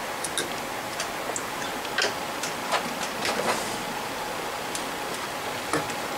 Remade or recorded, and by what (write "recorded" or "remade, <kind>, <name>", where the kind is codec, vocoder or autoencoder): recorded